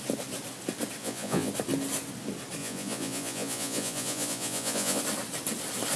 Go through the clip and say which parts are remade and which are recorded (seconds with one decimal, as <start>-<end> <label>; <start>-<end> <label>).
0.0-1.0 recorded; 1.0-1.5 remade; 1.5-2.6 recorded; 2.6-5.0 remade; 5.0-6.0 recorded